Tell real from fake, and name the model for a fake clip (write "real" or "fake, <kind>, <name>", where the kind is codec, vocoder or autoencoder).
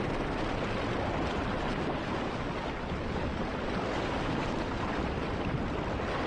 fake, vocoder, BigVGAN v2